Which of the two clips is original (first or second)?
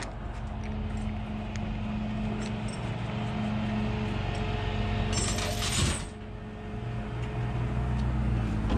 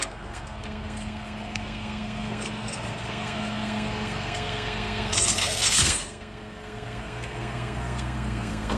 first